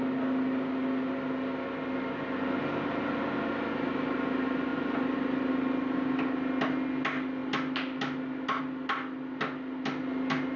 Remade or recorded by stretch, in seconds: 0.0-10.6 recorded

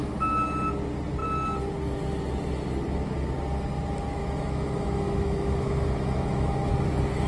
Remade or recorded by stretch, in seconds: 0.0-4.2 recorded; 4.2-6.7 remade; 6.7-7.3 recorded

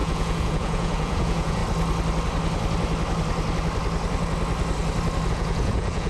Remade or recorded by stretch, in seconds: 0.0-1.6 remade; 1.6-5.3 recorded; 5.3-6.1 remade